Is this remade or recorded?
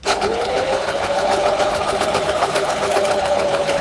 remade